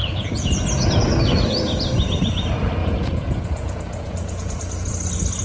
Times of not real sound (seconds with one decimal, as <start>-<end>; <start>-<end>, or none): 0.0-0.5; 2.8-4.9